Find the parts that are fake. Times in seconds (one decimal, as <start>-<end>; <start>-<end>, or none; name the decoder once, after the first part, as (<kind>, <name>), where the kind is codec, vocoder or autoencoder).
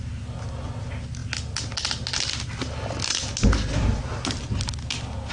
none